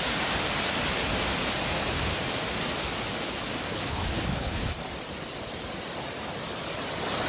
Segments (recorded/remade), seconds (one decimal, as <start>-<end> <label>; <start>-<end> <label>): 0.0-3.7 recorded; 3.7-4.7 remade; 4.7-7.3 recorded